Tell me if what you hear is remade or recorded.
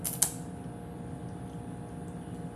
recorded